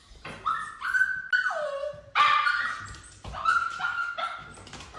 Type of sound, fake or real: real